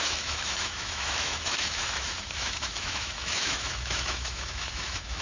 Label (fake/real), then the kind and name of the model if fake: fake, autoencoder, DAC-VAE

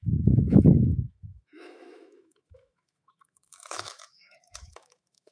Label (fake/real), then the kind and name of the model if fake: fake, autoencoder, DAC-VAE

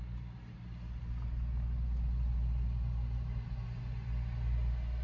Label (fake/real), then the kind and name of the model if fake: real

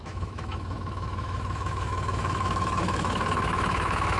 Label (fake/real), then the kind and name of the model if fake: fake, autoencoder, DAC-VAE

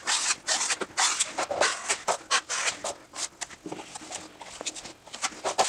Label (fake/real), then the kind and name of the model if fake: real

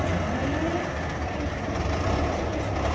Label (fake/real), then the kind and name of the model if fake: real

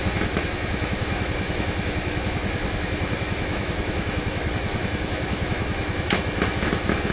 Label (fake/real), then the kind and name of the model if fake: fake, autoencoder, DAC-VAE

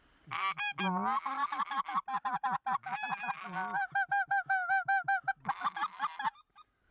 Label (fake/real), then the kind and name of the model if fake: real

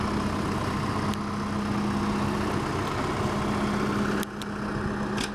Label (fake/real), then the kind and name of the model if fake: real